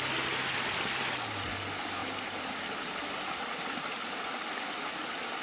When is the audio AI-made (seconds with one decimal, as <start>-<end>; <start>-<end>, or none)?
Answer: none